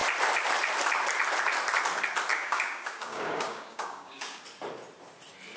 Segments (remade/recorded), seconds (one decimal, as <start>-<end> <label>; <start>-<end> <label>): 0.0-2.3 recorded; 2.3-4.4 remade; 4.4-5.6 recorded